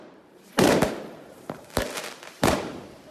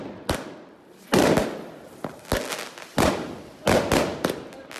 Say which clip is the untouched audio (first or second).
second